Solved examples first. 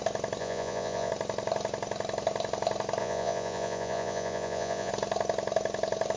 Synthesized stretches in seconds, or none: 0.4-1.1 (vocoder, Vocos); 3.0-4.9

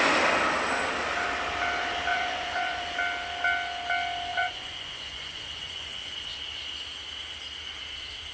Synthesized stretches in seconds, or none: 2.1-2.8 (vocoder, Vocos); 4.3-6.3

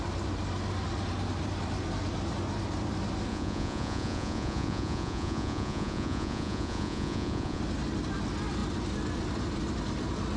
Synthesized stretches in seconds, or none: 3.3-7.6 (vocoder, Vocos)

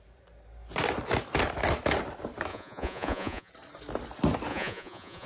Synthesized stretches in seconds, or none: 2.5-3.5 (vocoder, Vocos); 4.5-5.3